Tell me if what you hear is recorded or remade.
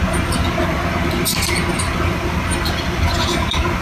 recorded